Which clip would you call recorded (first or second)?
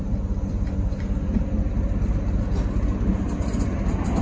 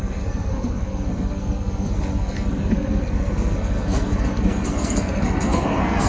first